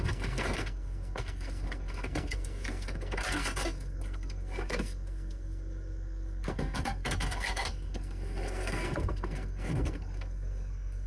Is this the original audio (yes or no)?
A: no